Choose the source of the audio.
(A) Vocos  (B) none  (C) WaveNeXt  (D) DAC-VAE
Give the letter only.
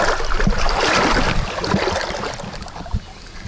B